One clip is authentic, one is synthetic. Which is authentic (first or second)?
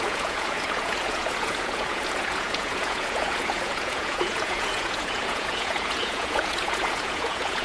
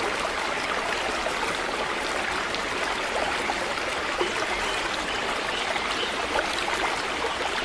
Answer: second